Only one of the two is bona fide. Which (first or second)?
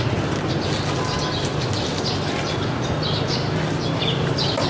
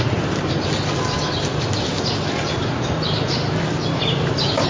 first